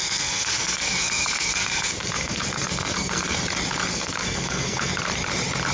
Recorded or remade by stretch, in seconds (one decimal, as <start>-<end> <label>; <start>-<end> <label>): 0.0-3.4 remade; 3.4-3.9 recorded; 3.9-4.9 remade; 4.9-5.7 recorded

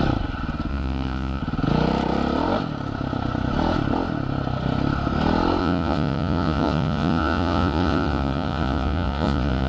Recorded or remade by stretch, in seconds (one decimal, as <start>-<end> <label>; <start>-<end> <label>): 0.0-0.7 recorded; 0.7-1.4 remade; 1.4-5.6 recorded; 5.6-9.7 remade

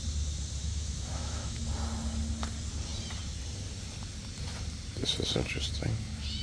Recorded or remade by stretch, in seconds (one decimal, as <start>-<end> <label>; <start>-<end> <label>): 0.0-0.6 recorded; 0.6-1.6 remade; 1.6-6.4 recorded

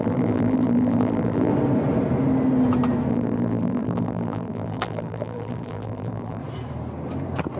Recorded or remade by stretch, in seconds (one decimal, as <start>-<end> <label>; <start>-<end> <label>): 0.0-1.5 remade; 1.5-3.1 recorded; 3.1-6.4 remade; 6.4-7.6 recorded